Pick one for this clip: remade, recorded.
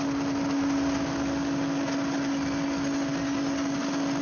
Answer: recorded